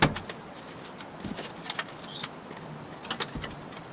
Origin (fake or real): real